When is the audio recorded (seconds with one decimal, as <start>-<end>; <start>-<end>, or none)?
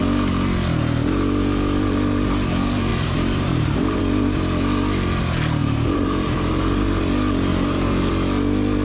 0.0-2.9; 4.0-5.6; 7.0-7.5; 8.1-8.8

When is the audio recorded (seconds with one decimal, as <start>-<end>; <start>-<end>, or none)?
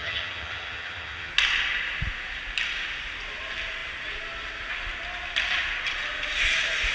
1.3-6.9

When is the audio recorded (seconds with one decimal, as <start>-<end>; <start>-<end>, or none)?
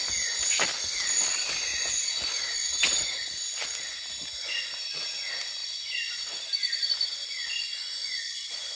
0.0-5.6; 6.9-8.7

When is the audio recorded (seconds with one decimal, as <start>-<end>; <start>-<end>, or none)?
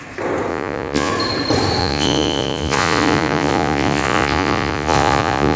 0.0-0.5; 1.1-1.8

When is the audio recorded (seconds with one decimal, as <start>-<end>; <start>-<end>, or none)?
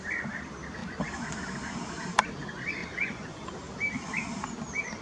0.0-2.8; 3.5-5.0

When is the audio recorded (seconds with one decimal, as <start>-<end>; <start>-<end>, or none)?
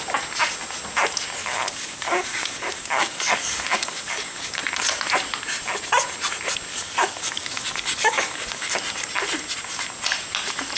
0.0-1.4; 4.6-6.7; 8.7-10.8